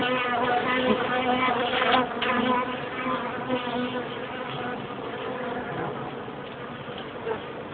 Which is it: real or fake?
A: real